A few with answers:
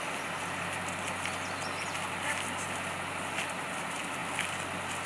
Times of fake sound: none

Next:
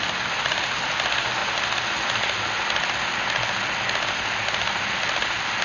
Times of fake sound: none

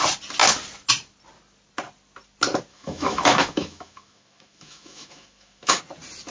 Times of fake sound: 2.7-5.8 (autoencoder, DAC-VAE)